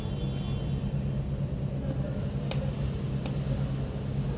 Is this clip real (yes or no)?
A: yes